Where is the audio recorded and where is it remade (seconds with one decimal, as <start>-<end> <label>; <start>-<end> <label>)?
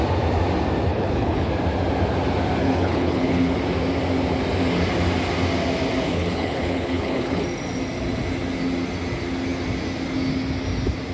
0.0-0.9 recorded; 0.9-1.5 remade; 1.5-2.6 recorded; 2.6-3.5 remade; 3.5-6.1 recorded; 6.1-7.4 remade; 7.4-11.1 recorded